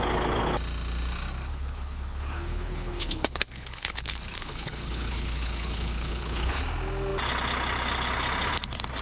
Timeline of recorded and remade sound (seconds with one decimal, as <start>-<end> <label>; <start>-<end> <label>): 0.0-1.5 recorded; 1.5-6.6 remade; 6.6-9.0 recorded